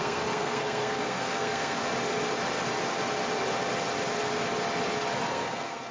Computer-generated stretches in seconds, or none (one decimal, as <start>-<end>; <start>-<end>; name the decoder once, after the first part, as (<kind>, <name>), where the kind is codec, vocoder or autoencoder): 0.0-1.8 (codec, SNAC); 5.3-5.9